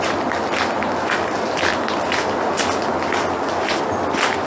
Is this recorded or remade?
recorded